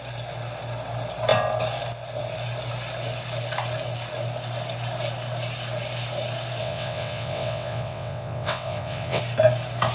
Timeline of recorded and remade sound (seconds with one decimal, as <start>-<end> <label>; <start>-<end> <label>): 0.0-6.6 recorded; 6.6-9.2 remade; 9.2-9.9 recorded

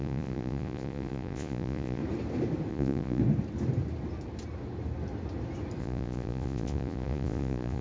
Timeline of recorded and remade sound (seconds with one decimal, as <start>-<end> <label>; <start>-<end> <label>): 0.0-2.0 remade; 2.0-2.7 recorded; 2.7-3.2 remade; 3.2-5.8 recorded; 5.8-7.8 remade

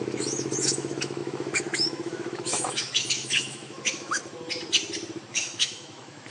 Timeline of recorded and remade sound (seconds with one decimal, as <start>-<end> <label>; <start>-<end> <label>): 0.0-4.2 remade; 4.2-5.3 recorded; 5.3-6.3 remade

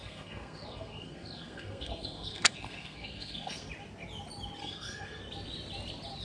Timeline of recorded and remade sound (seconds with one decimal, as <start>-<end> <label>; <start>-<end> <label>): 0.0-3.7 remade; 3.7-4.6 recorded; 4.6-5.2 remade; 5.2-6.2 recorded

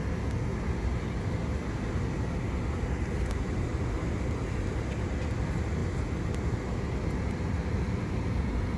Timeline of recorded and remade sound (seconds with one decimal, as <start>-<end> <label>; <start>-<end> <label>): 0.0-8.8 recorded

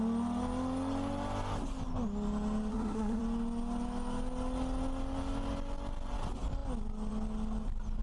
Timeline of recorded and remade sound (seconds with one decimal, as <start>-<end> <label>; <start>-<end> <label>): 0.0-2.7 recorded; 2.7-3.2 remade; 3.2-8.0 recorded

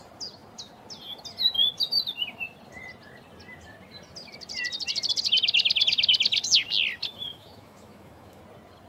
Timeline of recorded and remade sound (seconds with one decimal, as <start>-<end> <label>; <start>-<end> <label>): 0.0-7.1 recorded; 7.1-8.4 remade; 8.4-8.9 recorded

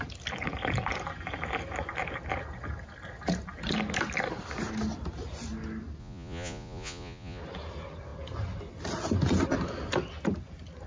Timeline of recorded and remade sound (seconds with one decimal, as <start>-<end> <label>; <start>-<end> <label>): 0.0-6.0 recorded; 6.0-7.4 remade; 7.4-10.9 recorded